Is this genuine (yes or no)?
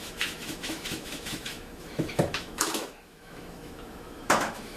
no